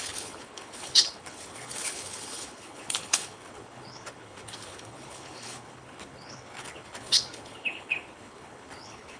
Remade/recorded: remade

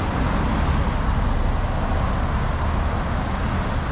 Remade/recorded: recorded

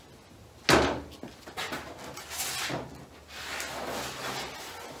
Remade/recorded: recorded